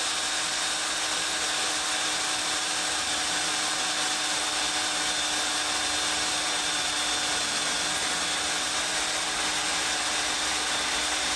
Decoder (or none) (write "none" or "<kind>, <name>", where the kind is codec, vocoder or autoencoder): none